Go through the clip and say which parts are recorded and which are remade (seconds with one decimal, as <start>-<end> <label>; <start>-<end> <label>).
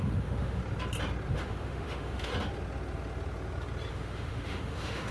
0.0-0.6 remade; 0.6-1.3 recorded; 1.3-2.3 remade; 2.3-3.9 recorded; 3.9-5.1 remade